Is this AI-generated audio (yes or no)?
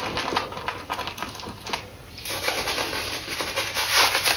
no